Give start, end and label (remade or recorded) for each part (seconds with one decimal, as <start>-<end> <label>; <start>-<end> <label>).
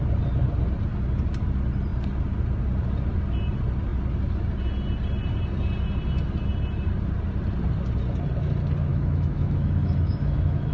0.0-8.9 recorded; 8.9-10.7 remade